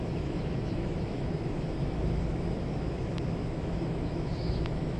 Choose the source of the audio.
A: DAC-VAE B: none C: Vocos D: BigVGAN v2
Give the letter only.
A